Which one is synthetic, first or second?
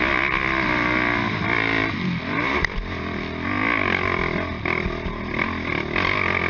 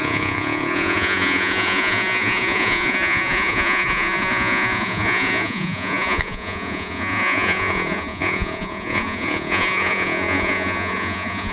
second